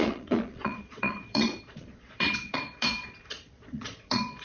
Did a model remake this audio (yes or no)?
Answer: yes